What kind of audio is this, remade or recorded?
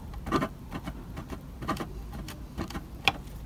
recorded